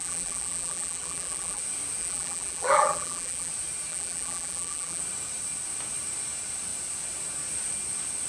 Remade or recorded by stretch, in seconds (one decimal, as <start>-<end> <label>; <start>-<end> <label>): 0.0-1.6 remade; 1.6-2.0 recorded; 2.0-3.5 remade; 3.5-3.9 recorded; 3.9-5.0 remade; 5.0-8.3 recorded